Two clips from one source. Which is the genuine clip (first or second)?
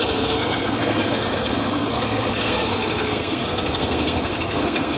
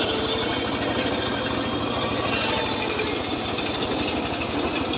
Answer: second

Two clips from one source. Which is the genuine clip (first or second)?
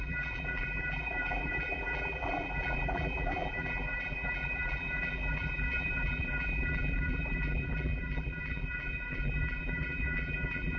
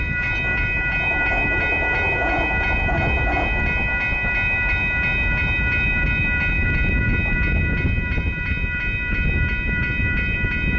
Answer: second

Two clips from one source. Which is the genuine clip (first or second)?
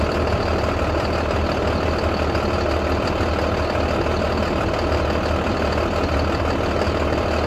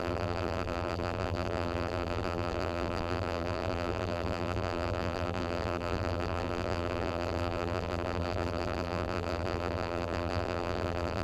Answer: first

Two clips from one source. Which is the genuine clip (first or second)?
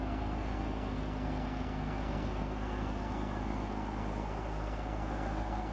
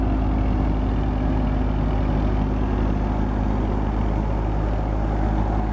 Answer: second